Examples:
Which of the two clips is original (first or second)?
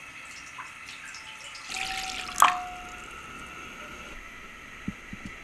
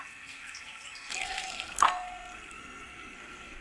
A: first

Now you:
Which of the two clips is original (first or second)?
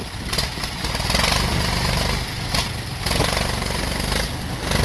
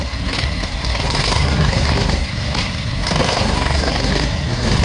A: first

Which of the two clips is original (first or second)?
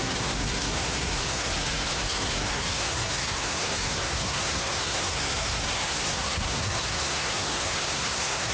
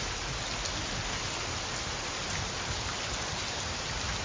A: second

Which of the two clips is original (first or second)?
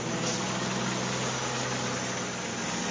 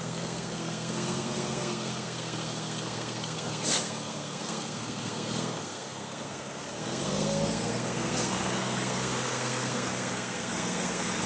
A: first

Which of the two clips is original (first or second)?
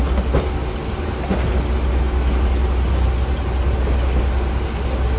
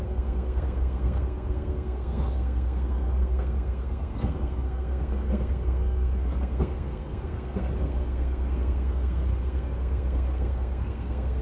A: first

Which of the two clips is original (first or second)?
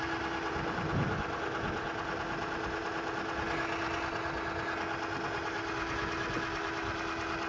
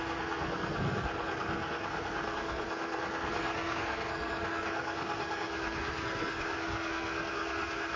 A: first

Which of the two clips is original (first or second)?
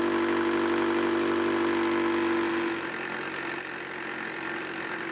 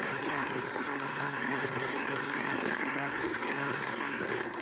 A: first